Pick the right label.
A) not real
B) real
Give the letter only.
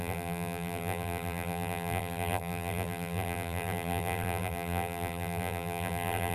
A